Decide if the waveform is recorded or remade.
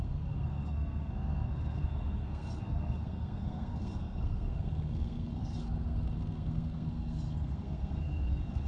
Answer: remade